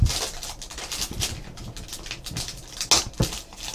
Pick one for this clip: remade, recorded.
recorded